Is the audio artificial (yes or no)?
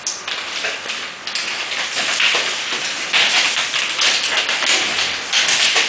no